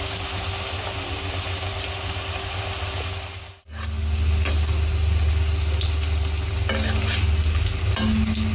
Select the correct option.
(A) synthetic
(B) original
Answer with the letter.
B